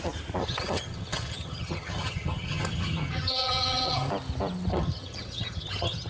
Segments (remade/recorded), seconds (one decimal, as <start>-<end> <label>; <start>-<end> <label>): 0.0-0.4 recorded; 0.4-4.1 remade; 4.1-4.7 recorded; 4.7-6.1 remade